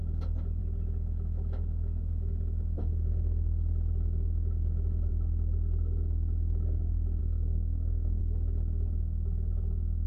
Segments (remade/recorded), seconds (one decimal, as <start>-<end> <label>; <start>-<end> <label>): 0.0-7.2 recorded; 7.2-8.2 remade; 8.2-10.1 recorded